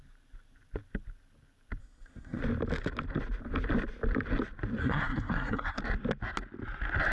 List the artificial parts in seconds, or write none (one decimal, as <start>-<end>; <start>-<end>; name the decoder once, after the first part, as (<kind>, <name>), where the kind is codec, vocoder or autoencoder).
1.8-2.4 (codec, SNAC); 4.8-5.8